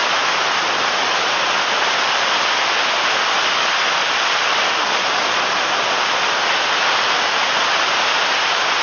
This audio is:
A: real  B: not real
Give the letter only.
A